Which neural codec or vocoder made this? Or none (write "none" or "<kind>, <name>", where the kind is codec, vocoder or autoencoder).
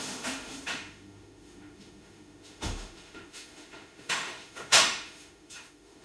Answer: autoencoder, DAC-VAE